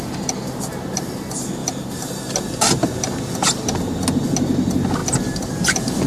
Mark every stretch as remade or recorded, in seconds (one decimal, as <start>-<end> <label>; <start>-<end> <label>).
0.0-5.0 recorded; 5.0-6.1 remade